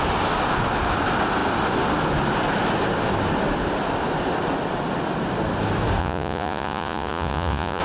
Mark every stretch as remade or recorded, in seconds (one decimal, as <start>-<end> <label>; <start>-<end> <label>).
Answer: 0.0-6.0 recorded; 6.0-7.8 remade